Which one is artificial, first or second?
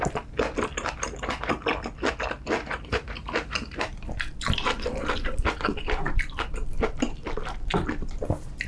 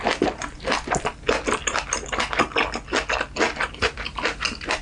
first